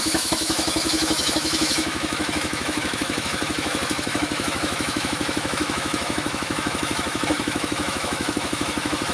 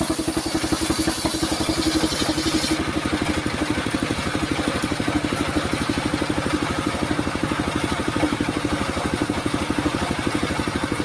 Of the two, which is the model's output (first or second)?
first